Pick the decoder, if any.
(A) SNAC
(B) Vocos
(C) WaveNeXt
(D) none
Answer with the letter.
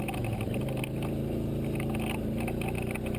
D